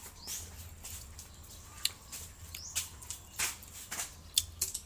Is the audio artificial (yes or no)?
no